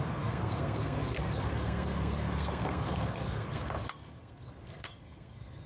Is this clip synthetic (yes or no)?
yes